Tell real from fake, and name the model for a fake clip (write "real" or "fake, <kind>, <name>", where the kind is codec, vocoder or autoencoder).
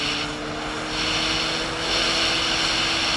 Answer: real